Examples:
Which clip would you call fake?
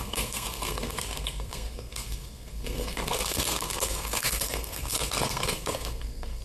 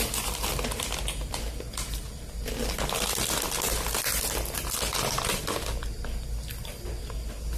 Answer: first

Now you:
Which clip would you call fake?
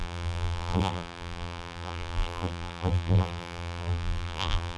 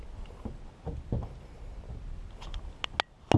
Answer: first